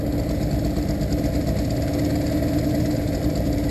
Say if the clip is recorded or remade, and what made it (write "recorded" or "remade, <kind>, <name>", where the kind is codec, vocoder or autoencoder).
recorded